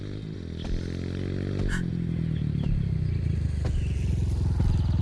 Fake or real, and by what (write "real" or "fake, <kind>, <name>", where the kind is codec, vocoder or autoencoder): real